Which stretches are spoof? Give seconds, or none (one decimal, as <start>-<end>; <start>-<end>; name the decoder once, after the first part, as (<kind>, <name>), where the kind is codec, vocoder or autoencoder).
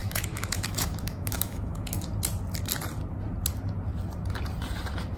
0.0-2.1 (autoencoder, DAC-VAE)